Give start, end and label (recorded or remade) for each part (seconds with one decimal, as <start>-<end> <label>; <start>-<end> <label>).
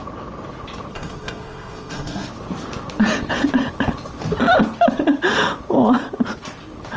0.0-0.9 recorded; 0.9-2.3 remade; 2.3-7.0 recorded